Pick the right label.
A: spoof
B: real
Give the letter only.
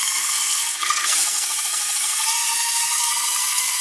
A